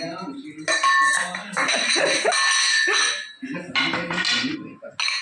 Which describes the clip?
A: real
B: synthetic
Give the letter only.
A